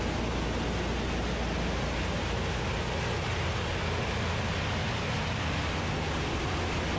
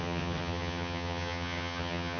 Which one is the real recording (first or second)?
first